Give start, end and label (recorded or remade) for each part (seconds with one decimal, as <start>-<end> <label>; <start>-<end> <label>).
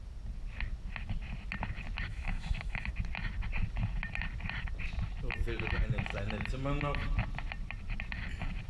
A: 0.0-2.1 recorded; 2.1-2.9 remade; 2.9-8.7 recorded